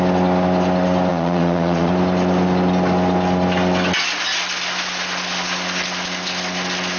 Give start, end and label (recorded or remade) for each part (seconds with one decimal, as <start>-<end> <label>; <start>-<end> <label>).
0.0-1.1 recorded; 1.1-1.9 remade; 1.9-7.0 recorded